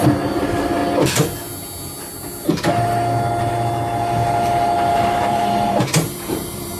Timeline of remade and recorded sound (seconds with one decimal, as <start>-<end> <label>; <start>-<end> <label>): 0.0-0.8 remade; 0.8-4.9 recorded; 4.9-6.8 remade